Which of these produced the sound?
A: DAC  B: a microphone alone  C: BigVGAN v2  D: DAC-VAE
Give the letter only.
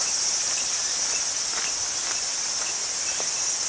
B